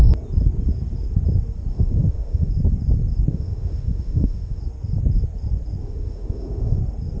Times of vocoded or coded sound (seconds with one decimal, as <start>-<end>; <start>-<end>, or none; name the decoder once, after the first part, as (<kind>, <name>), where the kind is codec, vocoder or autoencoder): 1.7-2.5 (autoencoder, DAC-VAE); 3.3-4.6; 5.8-6.8